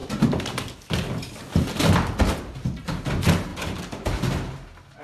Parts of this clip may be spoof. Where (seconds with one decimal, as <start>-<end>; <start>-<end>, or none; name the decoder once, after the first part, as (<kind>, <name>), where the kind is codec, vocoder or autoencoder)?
none